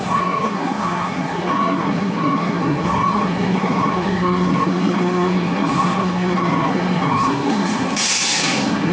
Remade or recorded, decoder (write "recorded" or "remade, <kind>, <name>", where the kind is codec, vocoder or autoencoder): remade, codec, SNAC